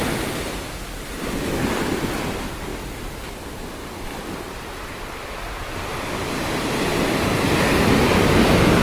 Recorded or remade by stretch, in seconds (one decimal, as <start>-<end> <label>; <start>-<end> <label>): 0.0-8.8 recorded